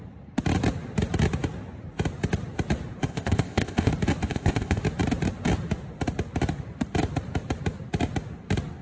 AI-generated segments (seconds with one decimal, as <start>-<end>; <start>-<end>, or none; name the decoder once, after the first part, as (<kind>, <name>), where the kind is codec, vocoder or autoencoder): 3.1-3.9 (codec, ZipCodec); 4.3-4.8